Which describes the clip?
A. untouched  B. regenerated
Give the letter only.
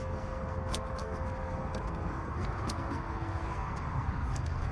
B